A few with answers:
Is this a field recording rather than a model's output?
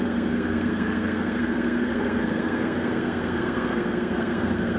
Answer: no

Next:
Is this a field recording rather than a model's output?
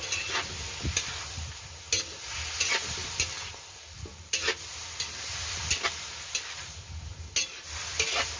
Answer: yes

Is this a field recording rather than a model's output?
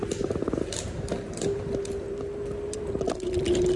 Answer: yes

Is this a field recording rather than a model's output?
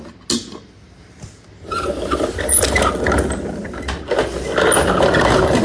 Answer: yes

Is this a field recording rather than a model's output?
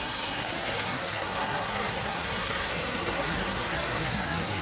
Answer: no